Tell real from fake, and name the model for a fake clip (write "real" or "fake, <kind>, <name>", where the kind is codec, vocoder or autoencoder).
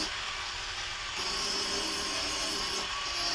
real